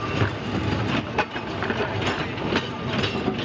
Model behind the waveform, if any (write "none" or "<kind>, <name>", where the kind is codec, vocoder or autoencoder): none